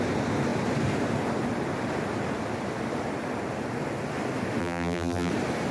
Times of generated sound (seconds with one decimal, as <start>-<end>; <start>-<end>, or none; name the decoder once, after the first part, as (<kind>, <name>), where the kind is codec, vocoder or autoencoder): 4.6-5.3 (vocoder, BigVGAN v2)